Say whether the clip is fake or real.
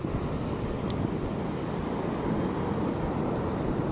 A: real